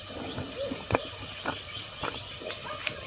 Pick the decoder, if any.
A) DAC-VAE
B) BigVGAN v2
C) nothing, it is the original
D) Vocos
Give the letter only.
C